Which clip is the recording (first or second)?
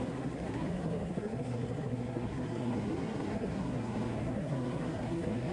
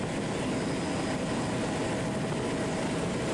second